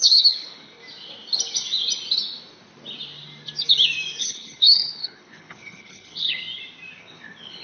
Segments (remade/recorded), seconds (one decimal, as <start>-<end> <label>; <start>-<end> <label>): 0.0-0.8 remade; 0.8-4.2 recorded; 4.2-6.4 remade; 6.4-7.0 recorded; 7.0-7.6 remade